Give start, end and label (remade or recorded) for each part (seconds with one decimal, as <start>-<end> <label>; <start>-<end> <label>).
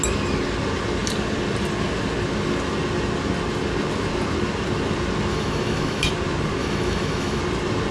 0.0-5.3 recorded; 5.3-6.1 remade; 6.1-6.6 recorded; 6.6-7.4 remade; 7.4-7.9 recorded